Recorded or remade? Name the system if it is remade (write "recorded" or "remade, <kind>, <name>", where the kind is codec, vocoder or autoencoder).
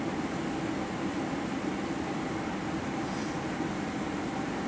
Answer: recorded